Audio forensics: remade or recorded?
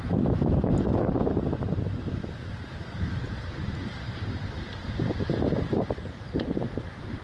remade